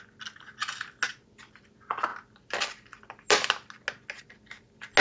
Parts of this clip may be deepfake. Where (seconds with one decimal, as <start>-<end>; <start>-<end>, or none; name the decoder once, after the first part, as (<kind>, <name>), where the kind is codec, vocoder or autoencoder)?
none